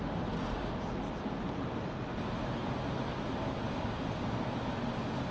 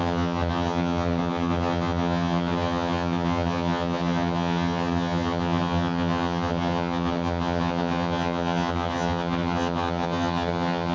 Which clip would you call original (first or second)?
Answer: first